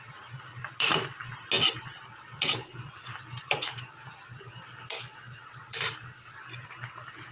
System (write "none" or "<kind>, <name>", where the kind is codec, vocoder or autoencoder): none